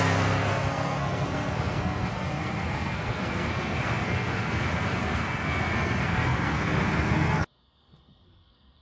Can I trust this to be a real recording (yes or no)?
no